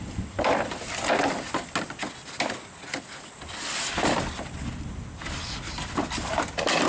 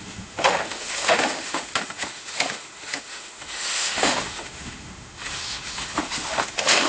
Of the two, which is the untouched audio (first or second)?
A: first